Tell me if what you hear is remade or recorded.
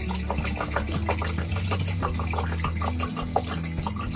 recorded